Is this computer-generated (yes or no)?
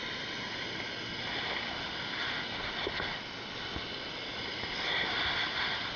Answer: no